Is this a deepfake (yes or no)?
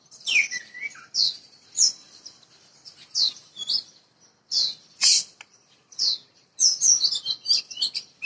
no